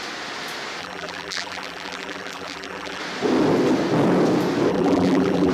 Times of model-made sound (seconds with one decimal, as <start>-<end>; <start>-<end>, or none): 0.8-3.0; 4.7-5.5